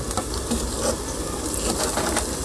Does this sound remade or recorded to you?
recorded